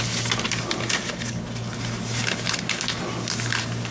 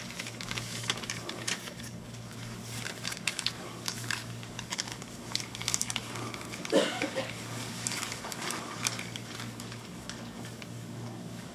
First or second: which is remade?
second